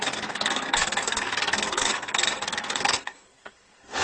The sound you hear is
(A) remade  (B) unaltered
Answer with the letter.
A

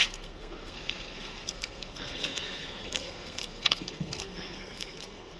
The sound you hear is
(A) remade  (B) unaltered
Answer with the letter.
A